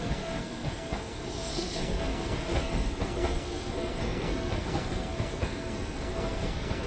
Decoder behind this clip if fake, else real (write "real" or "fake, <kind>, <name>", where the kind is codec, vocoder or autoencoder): fake, codec, SNAC